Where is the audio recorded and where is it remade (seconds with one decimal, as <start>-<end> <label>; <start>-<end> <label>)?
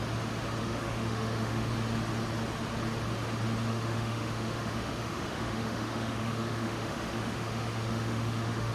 0.0-0.6 recorded; 0.6-1.7 remade; 1.7-3.7 recorded; 3.7-8.7 remade